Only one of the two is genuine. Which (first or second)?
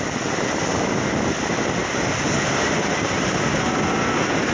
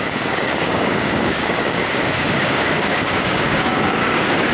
first